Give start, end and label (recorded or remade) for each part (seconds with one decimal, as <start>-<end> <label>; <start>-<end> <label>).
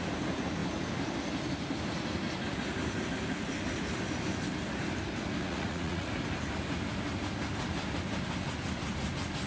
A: 0.0-5.4 recorded; 5.4-6.1 remade; 6.1-9.5 recorded